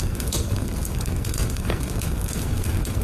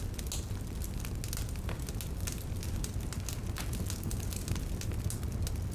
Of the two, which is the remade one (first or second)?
first